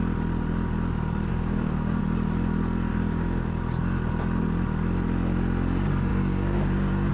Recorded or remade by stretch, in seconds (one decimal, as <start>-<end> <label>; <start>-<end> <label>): 0.0-1.3 recorded; 1.3-2.0 remade; 2.0-2.9 recorded; 2.9-3.6 remade; 3.6-6.1 recorded; 6.1-7.1 remade